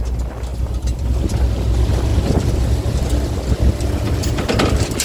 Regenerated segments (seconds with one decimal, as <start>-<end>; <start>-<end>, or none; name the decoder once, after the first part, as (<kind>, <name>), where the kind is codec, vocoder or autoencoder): 0.5-1.2 (vocoder, BigVGAN v2); 4.2-5.0